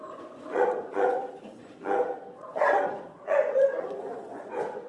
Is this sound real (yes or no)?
no